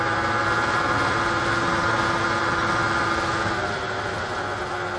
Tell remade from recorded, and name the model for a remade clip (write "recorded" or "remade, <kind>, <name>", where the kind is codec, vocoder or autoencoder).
recorded